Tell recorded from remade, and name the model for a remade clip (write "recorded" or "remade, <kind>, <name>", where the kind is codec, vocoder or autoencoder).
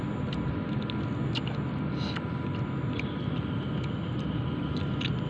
recorded